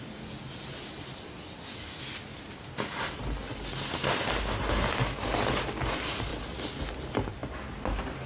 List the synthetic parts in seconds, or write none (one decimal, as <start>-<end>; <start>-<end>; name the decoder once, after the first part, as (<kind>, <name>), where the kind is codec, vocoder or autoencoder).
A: none